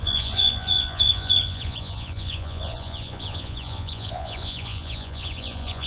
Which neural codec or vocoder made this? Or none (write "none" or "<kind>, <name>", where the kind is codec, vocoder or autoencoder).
vocoder, Vocos